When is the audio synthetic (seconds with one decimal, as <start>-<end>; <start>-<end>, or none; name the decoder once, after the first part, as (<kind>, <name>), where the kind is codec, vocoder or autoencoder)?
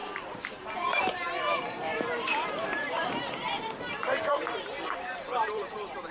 0.7-6.1 (vocoder, BigVGAN v2)